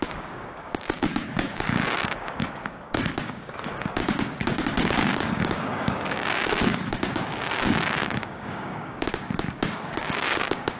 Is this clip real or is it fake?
fake